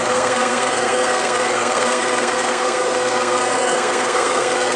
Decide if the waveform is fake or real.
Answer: fake